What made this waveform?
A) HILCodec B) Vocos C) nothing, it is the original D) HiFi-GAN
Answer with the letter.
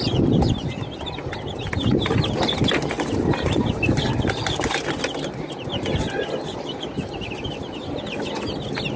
C